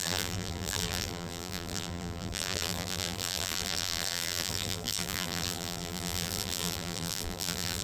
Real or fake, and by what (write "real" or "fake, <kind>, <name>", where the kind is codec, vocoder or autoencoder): fake, vocoder, BigVGAN v2